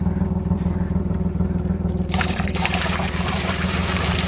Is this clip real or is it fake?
fake